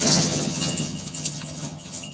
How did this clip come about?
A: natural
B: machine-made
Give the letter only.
B